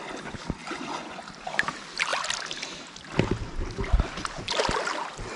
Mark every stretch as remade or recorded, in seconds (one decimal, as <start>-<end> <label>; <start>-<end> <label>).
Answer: 0.0-0.6 recorded; 0.6-1.2 remade; 1.2-5.4 recorded